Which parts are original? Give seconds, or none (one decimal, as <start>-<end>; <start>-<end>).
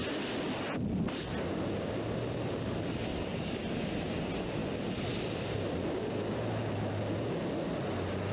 0.0-3.1; 3.6-8.3